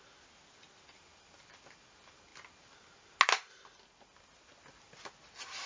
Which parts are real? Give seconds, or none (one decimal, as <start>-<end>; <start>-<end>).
0.0-5.7